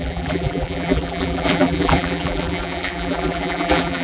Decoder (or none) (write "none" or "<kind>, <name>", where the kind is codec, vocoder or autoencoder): vocoder, BigVGAN v2